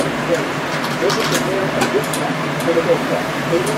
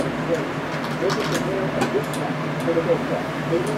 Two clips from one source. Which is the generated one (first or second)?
first